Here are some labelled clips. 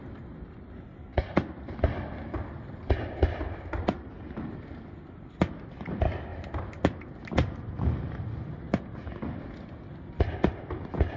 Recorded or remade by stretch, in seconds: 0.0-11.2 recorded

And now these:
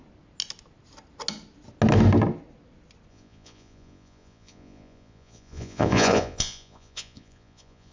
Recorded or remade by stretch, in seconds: 0.0-3.1 recorded; 3.1-7.9 remade

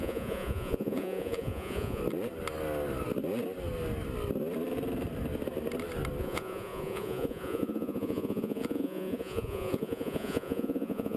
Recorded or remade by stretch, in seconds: 0.0-2.0 remade; 2.0-6.2 recorded; 6.2-11.2 remade

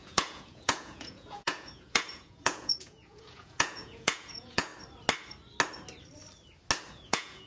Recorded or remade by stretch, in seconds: 0.0-4.7 remade; 4.7-6.9 recorded; 6.9-7.5 remade

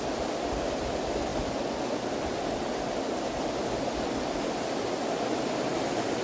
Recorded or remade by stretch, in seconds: 0.0-6.2 recorded

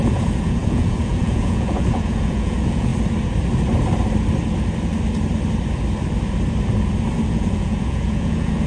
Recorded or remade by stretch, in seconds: 0.0-2.9 remade; 2.9-7.3 recorded; 7.3-8.7 remade